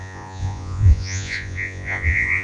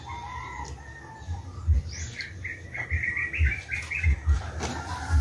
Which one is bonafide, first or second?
second